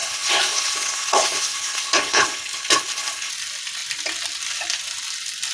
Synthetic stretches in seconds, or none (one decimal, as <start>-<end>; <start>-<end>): 0.0-3.3